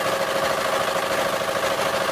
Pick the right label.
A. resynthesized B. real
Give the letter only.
B